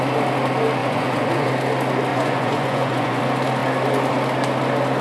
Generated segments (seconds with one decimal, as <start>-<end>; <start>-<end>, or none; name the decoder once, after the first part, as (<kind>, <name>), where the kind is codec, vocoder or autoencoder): 0.8-1.5 (vocoder, Vocos); 2.1-3.2